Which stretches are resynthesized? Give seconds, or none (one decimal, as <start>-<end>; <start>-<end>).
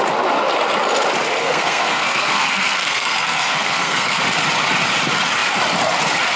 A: 1.4-4.2